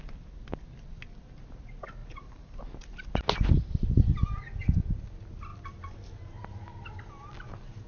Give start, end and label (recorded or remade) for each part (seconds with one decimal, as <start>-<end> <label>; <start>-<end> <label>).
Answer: 0.0-2.0 recorded; 2.0-2.6 remade; 2.6-7.9 recorded